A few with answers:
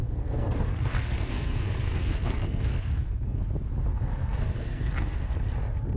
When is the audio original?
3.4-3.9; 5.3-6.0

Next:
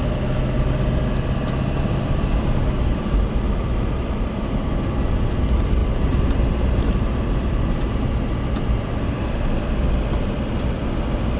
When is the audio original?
0.0-11.4

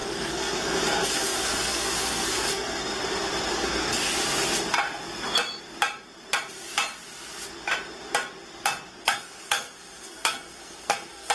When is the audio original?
2.9-3.5; 4.0-8.9